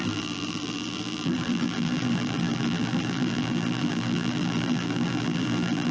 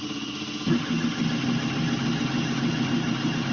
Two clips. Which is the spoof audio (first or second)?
first